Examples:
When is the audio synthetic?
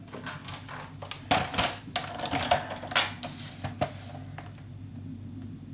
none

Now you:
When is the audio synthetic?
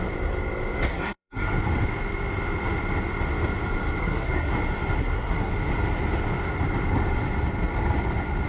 0.9-1.5 (codec, SNAC); 4.0-4.5; 5.0-5.5